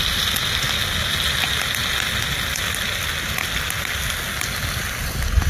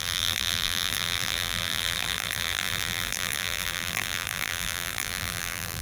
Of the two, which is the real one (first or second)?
first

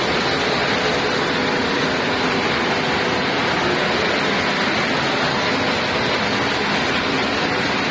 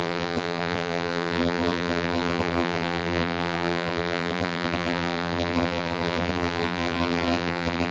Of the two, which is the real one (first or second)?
first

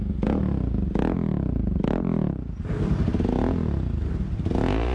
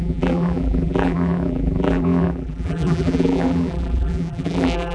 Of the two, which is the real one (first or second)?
first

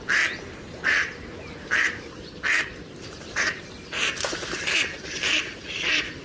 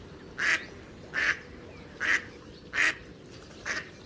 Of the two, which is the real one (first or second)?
second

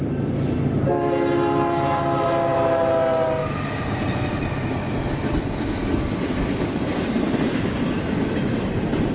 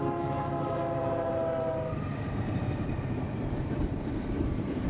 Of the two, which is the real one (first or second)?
first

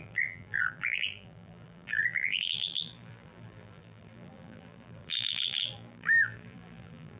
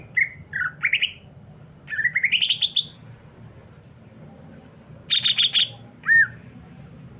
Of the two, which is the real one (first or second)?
second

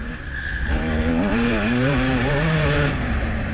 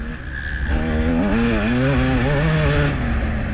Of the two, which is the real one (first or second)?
second